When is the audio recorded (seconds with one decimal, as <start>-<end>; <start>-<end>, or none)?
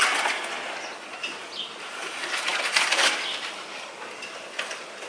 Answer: 0.0-1.6